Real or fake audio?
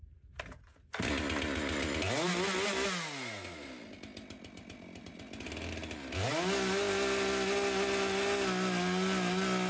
real